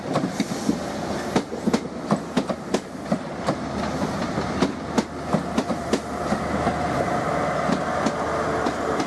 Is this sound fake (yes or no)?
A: no